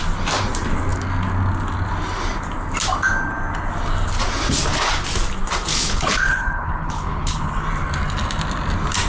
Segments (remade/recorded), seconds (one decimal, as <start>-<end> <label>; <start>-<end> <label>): 0.0-5.7 recorded; 5.7-7.5 remade; 7.5-9.1 recorded